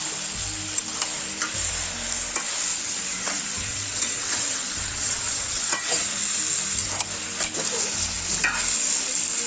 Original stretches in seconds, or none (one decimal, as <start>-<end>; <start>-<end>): 0.0-2.7; 6.2-9.5